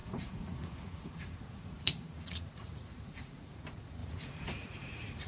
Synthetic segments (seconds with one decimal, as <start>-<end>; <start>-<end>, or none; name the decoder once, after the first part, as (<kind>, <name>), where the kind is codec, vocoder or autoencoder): 0.0-5.3 (vocoder, Vocos)